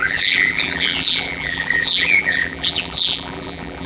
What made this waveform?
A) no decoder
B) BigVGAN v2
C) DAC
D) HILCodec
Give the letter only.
B